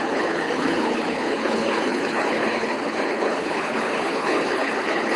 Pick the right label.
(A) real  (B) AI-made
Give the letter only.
B